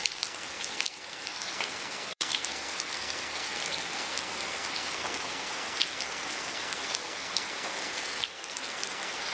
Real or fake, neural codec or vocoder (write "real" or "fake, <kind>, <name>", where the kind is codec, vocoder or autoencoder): fake, codec, SNAC